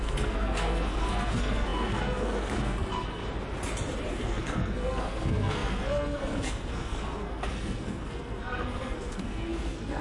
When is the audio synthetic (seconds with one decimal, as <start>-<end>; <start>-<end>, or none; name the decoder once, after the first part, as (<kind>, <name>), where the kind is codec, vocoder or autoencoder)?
0.0-3.2 (codec, SNAC); 4.1-10.0